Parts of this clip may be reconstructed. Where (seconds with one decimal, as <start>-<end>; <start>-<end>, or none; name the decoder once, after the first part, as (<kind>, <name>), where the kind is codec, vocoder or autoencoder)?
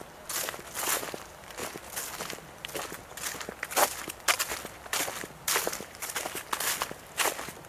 none